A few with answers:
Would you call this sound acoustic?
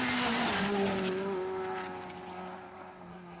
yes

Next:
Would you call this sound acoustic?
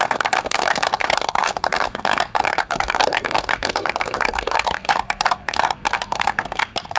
no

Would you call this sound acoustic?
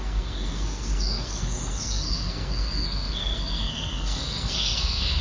no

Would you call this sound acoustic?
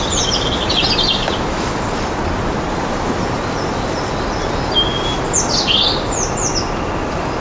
yes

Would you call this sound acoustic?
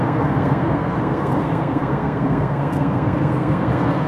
no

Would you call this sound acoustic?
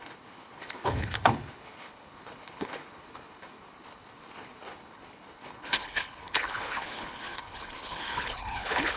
no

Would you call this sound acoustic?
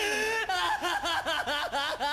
yes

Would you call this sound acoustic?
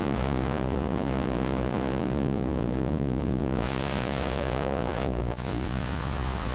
no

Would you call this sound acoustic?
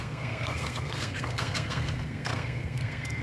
no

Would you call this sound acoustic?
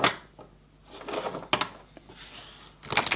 yes